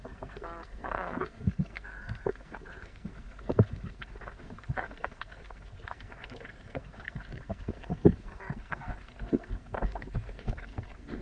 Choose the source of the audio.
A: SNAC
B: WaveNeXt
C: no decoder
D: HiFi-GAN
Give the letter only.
A